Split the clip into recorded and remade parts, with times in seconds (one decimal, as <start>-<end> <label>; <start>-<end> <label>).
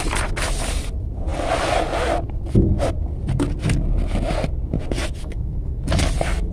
0.0-5.2 recorded; 5.2-5.8 remade; 5.8-6.5 recorded